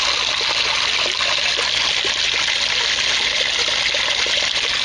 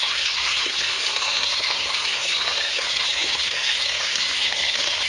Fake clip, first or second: second